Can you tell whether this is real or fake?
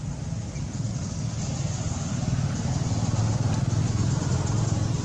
real